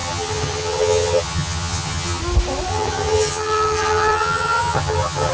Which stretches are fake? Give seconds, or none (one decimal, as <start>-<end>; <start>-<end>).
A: 0.0-2.2; 2.7-5.3